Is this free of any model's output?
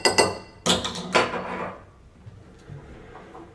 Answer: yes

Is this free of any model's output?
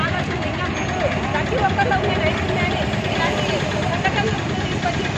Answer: yes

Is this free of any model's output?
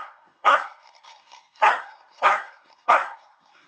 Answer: no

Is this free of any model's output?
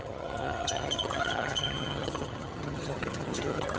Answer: no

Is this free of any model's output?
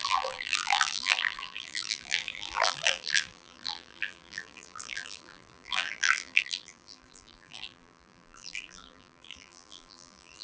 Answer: no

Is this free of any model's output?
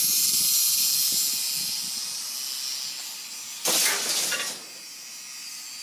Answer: yes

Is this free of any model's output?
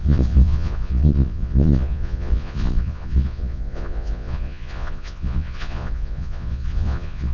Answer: no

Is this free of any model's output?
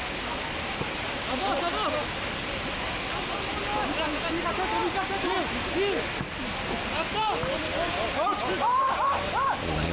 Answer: yes